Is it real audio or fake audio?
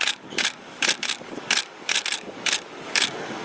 fake